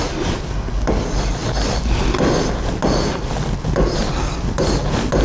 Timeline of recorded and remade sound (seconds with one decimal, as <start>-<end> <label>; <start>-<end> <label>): 0.0-5.2 recorded